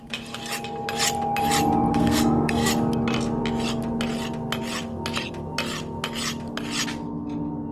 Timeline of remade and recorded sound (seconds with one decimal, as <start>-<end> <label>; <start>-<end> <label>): 0.0-1.9 recorded; 1.9-2.7 remade; 2.7-7.7 recorded